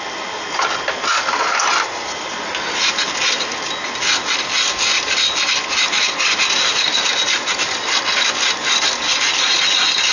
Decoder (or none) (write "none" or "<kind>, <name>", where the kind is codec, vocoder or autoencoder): none